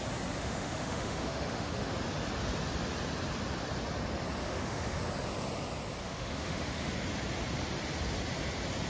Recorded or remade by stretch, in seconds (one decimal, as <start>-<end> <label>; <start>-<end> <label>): 0.0-0.4 recorded; 0.4-1.9 remade; 1.9-4.4 recorded; 4.4-5.0 remade; 5.0-6.0 recorded; 6.0-6.9 remade; 6.9-8.9 recorded